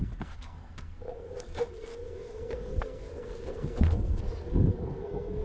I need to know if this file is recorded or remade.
remade